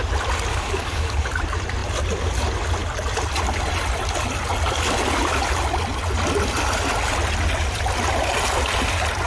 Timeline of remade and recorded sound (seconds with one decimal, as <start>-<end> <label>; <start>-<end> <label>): 0.0-0.5 recorded; 0.5-1.3 remade; 1.3-9.3 recorded